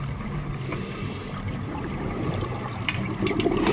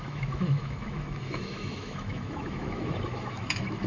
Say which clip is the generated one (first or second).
second